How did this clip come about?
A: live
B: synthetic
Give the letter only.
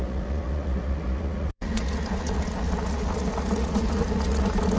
B